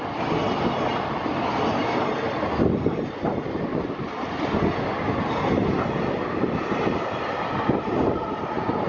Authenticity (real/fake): real